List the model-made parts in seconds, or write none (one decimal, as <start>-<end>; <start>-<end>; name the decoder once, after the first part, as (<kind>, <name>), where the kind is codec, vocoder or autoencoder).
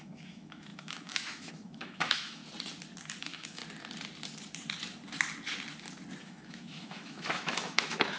0.0-2.4 (autoencoder, DAC-VAE); 3.2-3.6; 6.2-8.2